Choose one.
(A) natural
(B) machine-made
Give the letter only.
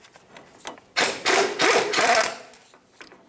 A